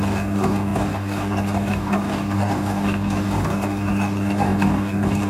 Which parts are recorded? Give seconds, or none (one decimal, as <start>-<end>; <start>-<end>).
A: none